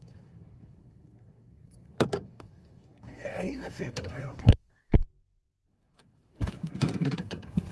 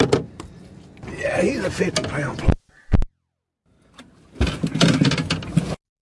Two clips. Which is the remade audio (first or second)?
first